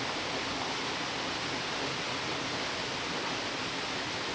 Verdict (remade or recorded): recorded